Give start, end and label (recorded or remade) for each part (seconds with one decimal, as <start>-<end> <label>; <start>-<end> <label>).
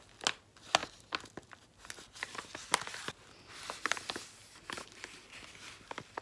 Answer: 0.0-6.2 recorded